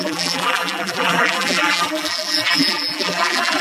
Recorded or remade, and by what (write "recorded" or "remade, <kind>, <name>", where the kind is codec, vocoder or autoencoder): remade, vocoder, BigVGAN v2